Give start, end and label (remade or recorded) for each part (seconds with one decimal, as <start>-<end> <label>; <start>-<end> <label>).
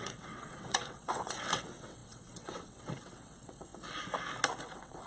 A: 0.0-3.7 remade; 3.7-4.6 recorded; 4.6-5.1 remade